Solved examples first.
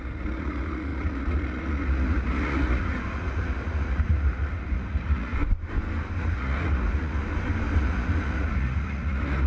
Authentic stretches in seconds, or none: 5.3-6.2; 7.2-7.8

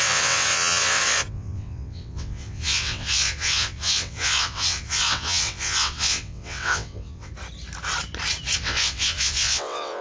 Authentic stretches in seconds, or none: 7.3-8.6

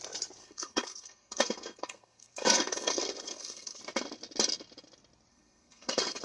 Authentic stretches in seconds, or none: 0.0-0.4; 3.8-5.3

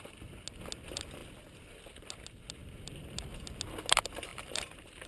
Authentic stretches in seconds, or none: 0.0-2.6; 3.2-4.3

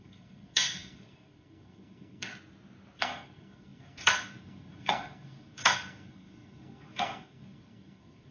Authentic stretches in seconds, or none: 2.3-3.0

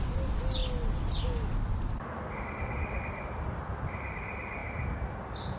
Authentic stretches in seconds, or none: 0.0-5.6

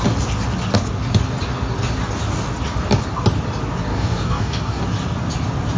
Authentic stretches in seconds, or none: 0.0-3.9; 4.8-5.8

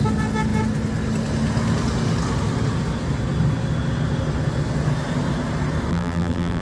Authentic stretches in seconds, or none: 0.0-5.9